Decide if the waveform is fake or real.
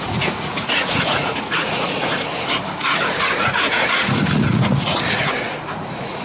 fake